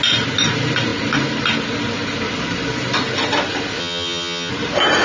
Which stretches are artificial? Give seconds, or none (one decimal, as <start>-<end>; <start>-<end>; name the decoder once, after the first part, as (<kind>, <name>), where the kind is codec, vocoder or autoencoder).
3.8-4.5 (vocoder, HiFi-GAN)